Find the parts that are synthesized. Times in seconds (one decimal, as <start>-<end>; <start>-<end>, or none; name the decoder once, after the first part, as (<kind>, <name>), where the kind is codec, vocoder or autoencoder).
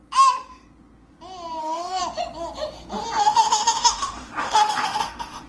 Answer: 1.6-2.0 (autoencoder, DAC-VAE); 3.2-5.5